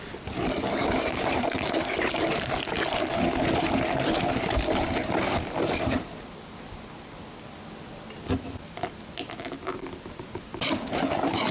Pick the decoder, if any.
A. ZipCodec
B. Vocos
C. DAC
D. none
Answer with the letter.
D